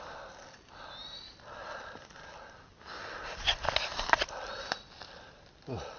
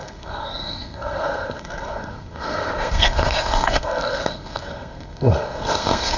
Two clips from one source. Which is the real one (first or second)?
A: first